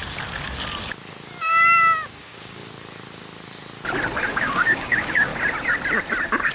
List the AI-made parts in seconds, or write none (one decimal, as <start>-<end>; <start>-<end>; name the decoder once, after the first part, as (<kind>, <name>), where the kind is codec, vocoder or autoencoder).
2.2-2.6 (codec, DAC); 4.3-5.3